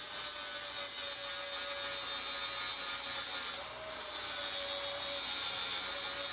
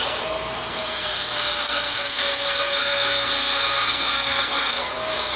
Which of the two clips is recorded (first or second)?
first